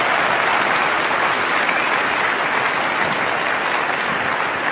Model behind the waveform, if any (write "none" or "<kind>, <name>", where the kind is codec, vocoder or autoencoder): none